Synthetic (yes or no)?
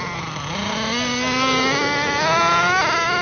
no